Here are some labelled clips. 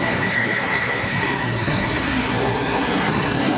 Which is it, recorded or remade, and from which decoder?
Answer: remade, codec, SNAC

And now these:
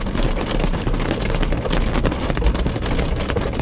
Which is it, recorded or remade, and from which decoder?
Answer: recorded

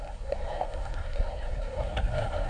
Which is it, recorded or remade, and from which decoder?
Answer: remade, codec, SNAC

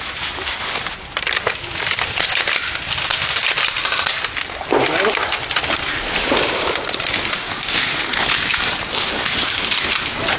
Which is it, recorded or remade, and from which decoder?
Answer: recorded